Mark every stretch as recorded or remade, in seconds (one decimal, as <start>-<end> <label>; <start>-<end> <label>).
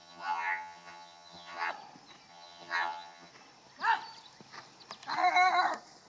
0.0-1.7 remade; 1.7-2.3 recorded; 2.3-3.3 remade; 3.3-6.1 recorded